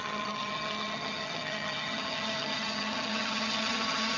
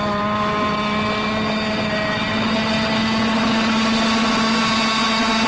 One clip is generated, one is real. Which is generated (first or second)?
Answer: first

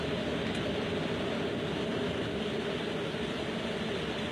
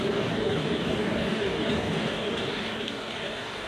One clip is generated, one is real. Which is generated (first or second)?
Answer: second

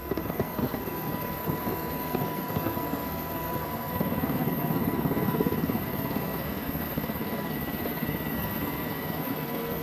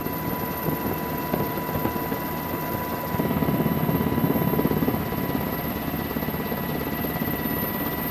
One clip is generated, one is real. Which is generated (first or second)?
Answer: first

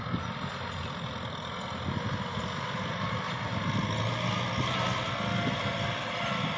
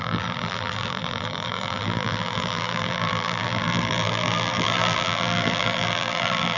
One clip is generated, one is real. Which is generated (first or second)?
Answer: second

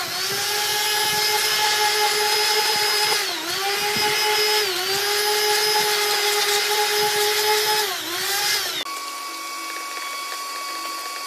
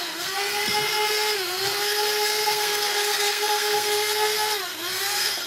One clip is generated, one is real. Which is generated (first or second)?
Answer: second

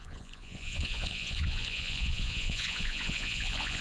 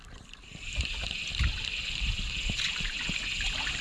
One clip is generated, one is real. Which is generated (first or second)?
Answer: first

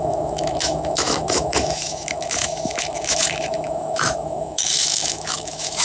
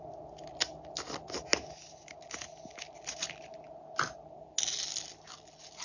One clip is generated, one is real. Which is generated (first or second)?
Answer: first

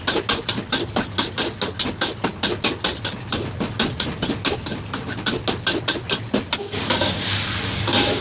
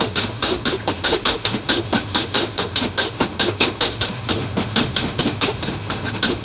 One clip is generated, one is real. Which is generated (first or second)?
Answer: second